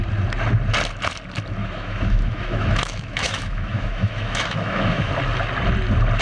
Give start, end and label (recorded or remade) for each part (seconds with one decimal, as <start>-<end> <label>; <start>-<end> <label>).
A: 0.0-1.6 recorded; 1.6-5.1 remade; 5.1-6.2 recorded